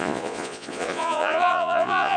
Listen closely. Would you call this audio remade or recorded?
remade